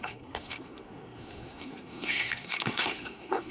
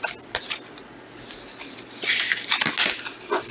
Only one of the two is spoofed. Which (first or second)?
first